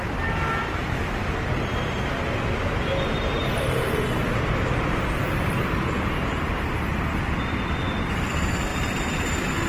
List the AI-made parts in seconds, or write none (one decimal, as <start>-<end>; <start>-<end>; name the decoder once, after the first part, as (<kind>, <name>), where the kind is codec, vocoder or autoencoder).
none